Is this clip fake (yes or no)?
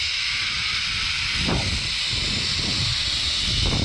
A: no